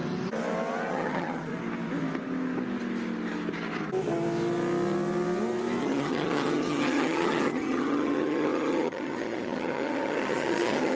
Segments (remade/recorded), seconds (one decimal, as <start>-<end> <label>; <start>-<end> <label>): 0.0-0.9 recorded; 0.9-1.5 remade; 1.5-5.8 recorded; 5.8-11.0 remade